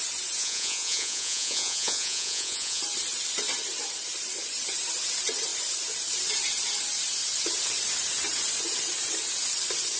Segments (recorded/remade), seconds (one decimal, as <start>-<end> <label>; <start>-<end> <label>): 0.0-0.4 recorded; 0.4-2.8 remade; 2.8-10.0 recorded